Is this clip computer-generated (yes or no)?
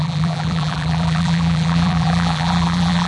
yes